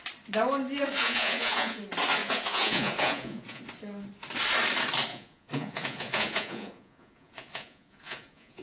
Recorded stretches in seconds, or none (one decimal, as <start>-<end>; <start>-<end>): 0.0-0.9; 1.8-2.2; 3.6-5.1